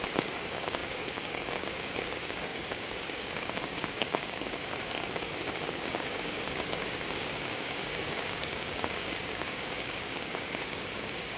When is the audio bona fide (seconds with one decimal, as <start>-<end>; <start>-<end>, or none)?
none